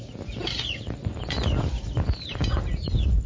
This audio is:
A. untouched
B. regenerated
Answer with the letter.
A